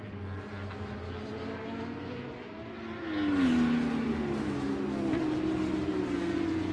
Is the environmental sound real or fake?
real